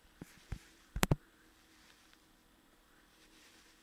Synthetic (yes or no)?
yes